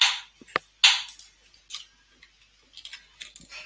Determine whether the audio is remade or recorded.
recorded